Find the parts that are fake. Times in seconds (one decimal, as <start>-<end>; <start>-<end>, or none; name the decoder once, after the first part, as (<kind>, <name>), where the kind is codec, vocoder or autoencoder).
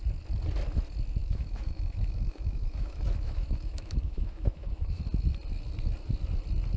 1.2-5.0 (autoencoder, DAC-VAE)